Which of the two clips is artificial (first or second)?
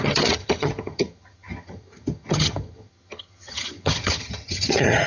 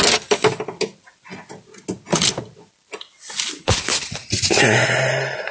first